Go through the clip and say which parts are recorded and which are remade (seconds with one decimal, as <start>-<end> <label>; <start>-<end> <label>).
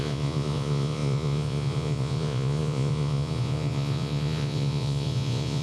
0.0-5.6 remade